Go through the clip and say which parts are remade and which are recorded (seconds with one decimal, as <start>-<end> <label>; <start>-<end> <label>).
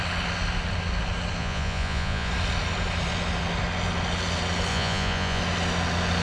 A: 0.0-1.4 recorded; 1.4-2.3 remade; 2.3-4.7 recorded; 4.7-5.4 remade; 5.4-6.2 recorded